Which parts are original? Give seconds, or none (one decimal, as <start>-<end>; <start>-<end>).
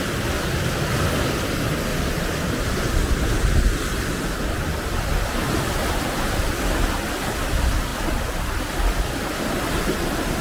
0.0-1.9; 5.7-10.4